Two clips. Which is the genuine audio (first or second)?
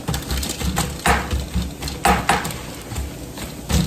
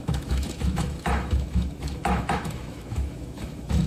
first